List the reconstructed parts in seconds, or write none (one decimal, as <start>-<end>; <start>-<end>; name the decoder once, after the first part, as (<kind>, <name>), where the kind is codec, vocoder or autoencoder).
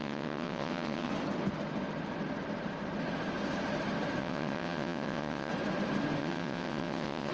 0.0-1.1 (vocoder, WaveNeXt); 4.2-5.5; 6.2-7.3